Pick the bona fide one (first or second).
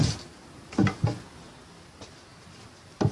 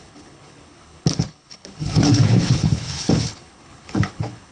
first